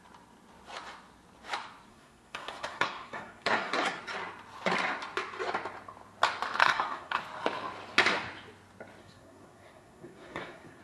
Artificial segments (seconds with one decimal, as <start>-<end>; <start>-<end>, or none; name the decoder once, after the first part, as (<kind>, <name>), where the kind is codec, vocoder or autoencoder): 1.9-4.0 (codec, SNAC); 6.6-7.2; 9.0-10.8